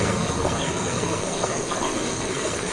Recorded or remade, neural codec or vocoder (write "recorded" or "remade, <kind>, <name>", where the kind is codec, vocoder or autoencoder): remade, codec, SNAC